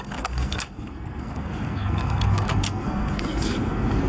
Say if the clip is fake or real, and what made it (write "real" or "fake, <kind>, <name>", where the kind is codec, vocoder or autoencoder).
fake, codec, SNAC